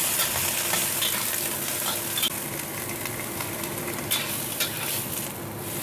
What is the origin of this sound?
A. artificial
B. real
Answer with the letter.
B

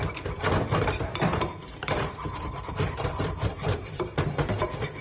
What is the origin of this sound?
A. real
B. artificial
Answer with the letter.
B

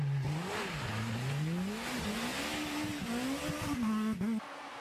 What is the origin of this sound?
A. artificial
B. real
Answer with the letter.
B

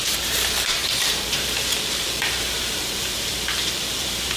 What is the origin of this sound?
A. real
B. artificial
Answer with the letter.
B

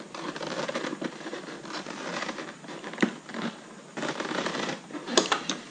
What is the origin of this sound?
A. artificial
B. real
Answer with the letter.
A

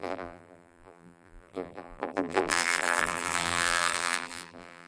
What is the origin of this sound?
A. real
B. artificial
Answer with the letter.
B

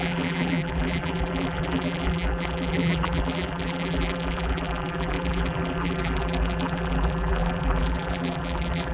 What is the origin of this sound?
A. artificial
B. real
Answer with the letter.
A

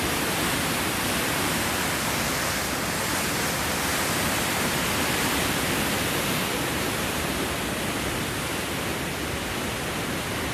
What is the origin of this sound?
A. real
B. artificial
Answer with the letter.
A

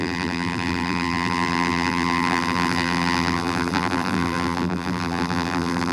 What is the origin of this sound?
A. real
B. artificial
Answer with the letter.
B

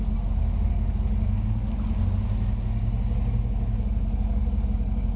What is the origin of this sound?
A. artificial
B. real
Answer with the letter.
B